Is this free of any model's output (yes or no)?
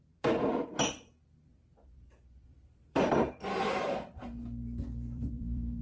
no